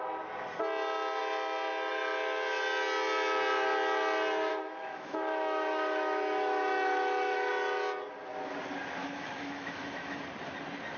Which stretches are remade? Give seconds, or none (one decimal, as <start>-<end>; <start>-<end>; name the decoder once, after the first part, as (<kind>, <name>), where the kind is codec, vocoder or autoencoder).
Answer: 4.5-7.5 (autoencoder, DAC-VAE); 9.0-10.2